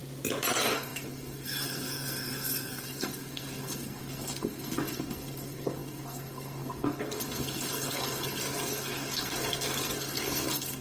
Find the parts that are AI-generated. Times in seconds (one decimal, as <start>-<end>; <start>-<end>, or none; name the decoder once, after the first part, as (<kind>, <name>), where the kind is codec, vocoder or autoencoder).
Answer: 0.5-10.8 (codec, SNAC)